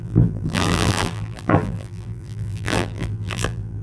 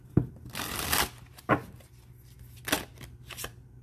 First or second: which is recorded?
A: second